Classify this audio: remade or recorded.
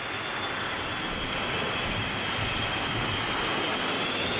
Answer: recorded